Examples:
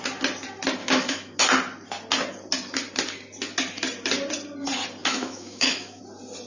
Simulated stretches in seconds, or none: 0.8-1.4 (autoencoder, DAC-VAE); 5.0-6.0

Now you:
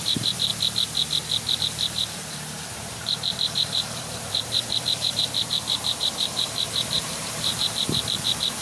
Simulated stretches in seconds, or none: 0.0-0.5 (vocoder, BigVGAN v2); 1.6-8.6

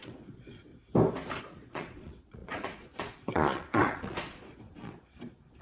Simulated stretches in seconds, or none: 0.0-0.7 (vocoder, Vocos); 1.4-5.6